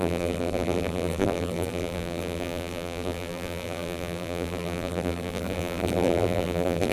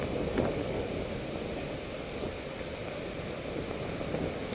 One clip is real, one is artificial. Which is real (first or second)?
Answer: second